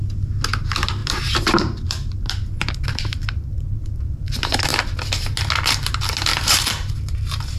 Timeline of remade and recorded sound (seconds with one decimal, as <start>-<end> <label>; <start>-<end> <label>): 0.0-1.0 recorded; 1.0-4.3 remade; 4.3-6.3 recorded; 6.3-6.9 remade; 6.9-7.6 recorded